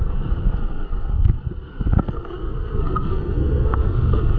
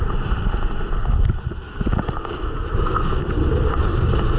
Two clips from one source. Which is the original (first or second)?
second